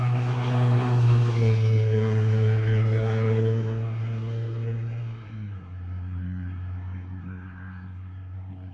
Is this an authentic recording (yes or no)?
no